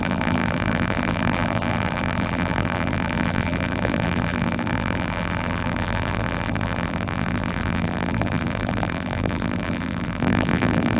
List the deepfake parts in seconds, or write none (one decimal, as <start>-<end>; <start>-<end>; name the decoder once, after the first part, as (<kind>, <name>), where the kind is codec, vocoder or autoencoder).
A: 0.0-11.0 (vocoder, BigVGAN v2)